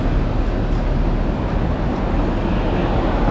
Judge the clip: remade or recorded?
recorded